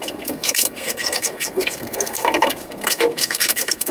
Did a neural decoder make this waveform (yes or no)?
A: yes